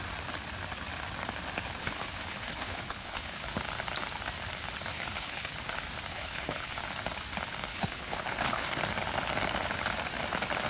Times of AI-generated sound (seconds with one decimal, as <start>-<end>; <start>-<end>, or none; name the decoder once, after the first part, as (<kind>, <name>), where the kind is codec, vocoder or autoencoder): 1.8-3.5 (codec, HILCodec); 4.9-5.5; 6.1-6.8; 7.7-8.8

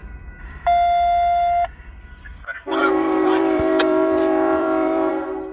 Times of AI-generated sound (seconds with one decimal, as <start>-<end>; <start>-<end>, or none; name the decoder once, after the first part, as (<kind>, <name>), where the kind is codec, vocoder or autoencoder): 0.0-0.5 (vocoder, BigVGAN v2); 2.8-5.1

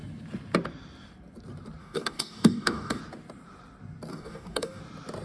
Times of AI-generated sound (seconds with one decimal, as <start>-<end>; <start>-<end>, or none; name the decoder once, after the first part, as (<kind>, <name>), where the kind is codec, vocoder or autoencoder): 1.8-3.0 (codec, DAC); 4.1-4.8

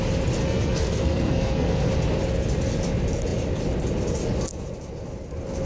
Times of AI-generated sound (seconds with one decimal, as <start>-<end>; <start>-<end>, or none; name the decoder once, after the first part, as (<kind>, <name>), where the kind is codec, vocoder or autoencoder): 0.4-1.9 (codec, SNAC)

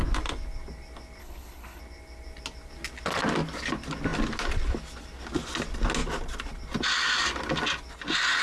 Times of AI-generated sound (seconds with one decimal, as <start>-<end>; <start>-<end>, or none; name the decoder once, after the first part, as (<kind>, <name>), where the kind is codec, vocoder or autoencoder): 1.2-1.8 (codec, HILCodec)

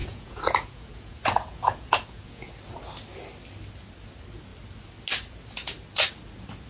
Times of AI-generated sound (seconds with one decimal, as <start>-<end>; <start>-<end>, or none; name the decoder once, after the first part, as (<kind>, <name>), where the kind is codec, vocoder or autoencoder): 0.0-2.5 (vocoder, Vocos)